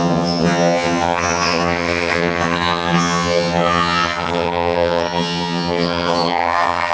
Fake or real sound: fake